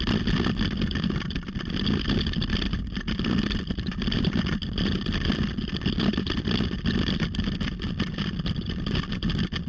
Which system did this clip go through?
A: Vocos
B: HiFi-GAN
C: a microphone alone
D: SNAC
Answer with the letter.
C